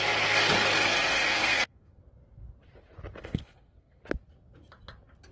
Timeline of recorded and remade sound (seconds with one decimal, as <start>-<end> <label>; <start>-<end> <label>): 0.0-1.4 recorded; 1.4-2.0 remade; 2.0-3.2 recorded; 3.2-4.0 remade; 4.0-5.3 recorded